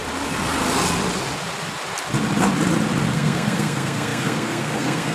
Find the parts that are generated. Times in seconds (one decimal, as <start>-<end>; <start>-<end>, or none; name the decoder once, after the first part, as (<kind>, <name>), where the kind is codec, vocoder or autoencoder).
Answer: 3.1-5.1 (codec, SNAC)